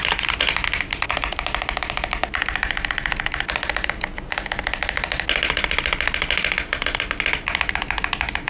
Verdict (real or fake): real